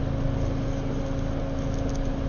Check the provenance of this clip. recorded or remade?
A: recorded